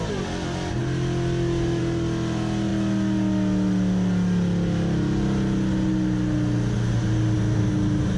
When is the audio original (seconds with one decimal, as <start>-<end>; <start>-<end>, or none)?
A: 0.0-8.2